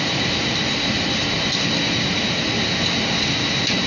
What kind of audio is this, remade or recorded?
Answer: recorded